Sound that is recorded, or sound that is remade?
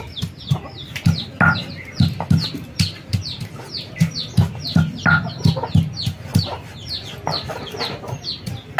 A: recorded